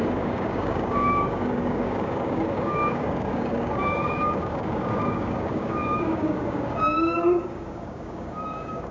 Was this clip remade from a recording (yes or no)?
yes